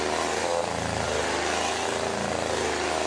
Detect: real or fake real